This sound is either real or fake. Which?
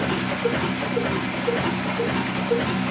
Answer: real